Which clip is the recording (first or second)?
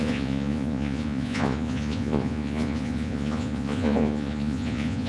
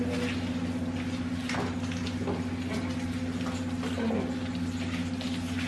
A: second